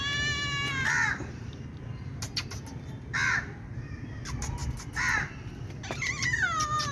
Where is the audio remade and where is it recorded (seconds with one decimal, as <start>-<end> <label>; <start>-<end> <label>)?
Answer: 0.0-6.9 recorded